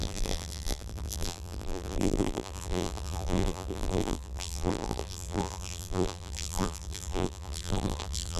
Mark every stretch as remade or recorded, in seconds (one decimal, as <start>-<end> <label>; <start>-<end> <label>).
0.0-8.4 remade